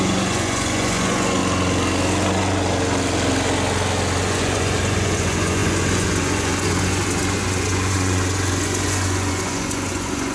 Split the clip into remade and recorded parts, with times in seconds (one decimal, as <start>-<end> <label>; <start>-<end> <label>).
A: 0.0-1.4 remade; 1.4-4.2 recorded; 4.2-10.3 remade

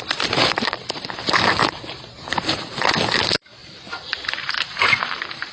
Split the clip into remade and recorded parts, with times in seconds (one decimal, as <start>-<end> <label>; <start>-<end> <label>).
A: 0.0-5.5 remade

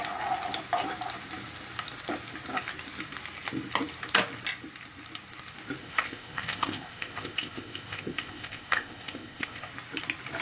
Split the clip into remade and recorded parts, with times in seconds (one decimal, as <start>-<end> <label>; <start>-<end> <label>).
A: 0.0-5.8 recorded; 5.8-9.7 remade; 9.7-10.4 recorded

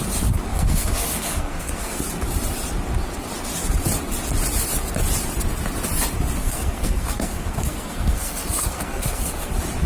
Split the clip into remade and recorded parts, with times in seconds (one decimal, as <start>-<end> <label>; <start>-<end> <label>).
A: 0.0-0.5 recorded; 0.5-2.0 remade; 2.0-6.4 recorded; 6.4-9.5 remade; 9.5-9.9 recorded

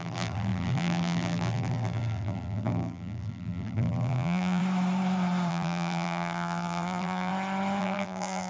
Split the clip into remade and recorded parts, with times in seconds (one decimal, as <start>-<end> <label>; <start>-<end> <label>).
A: 0.0-4.6 remade; 4.6-5.5 recorded; 5.5-7.3 remade; 7.3-7.8 recorded; 7.8-8.5 remade

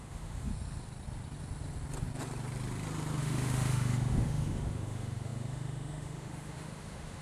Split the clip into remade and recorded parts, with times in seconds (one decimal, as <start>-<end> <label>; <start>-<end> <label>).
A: 0.0-0.5 remade; 0.5-3.2 recorded; 3.2-7.2 remade